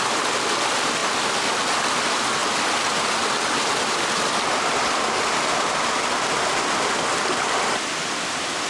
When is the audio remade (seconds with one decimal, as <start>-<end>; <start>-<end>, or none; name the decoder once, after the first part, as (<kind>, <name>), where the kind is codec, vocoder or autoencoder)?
none